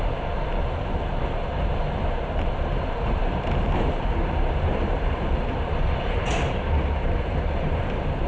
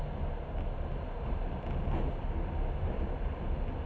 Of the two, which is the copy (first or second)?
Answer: first